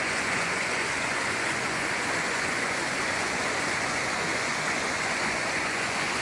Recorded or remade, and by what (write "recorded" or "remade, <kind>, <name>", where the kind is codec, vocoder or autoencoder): remade, vocoder, Vocos